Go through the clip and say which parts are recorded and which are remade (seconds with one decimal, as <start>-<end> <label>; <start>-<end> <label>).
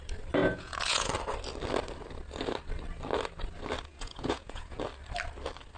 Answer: 0.0-0.4 recorded; 0.4-1.1 remade; 1.1-3.9 recorded; 3.9-4.8 remade; 4.8-5.8 recorded